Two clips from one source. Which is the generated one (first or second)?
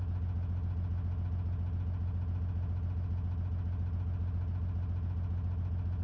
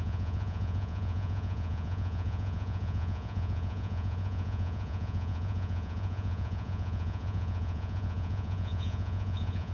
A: second